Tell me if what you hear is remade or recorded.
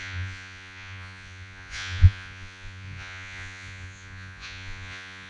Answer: remade